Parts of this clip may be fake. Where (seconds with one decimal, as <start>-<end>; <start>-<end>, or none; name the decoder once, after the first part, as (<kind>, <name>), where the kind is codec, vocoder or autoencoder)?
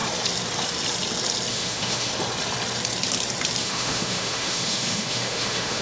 1.5-2.1 (autoencoder, DAC-VAE); 3.6-5.8